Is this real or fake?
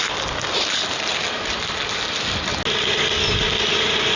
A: real